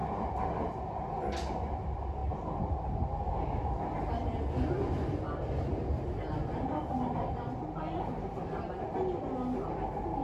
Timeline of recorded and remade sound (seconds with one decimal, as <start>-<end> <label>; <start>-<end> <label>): 0.0-10.2 recorded